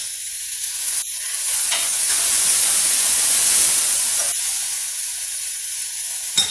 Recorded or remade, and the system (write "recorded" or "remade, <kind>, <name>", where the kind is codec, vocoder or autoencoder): remade, vocoder, Vocos